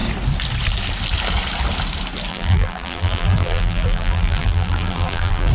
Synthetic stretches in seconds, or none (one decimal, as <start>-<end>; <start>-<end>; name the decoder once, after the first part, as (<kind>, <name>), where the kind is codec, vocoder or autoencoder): 2.3-5.5 (vocoder, BigVGAN v2)